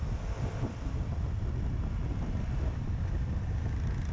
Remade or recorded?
recorded